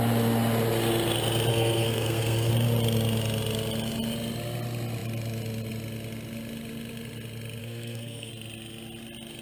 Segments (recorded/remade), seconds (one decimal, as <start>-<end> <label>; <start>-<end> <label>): 0.0-1.5 recorded; 1.5-2.5 remade; 2.5-7.6 recorded; 7.6-8.3 remade; 8.3-9.4 recorded